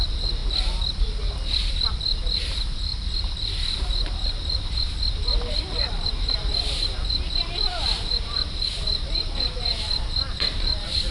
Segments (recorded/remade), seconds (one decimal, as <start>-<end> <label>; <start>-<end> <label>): 0.0-0.4 remade; 0.4-1.9 recorded; 1.9-11.1 remade